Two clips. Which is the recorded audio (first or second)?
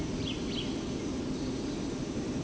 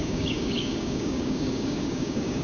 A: first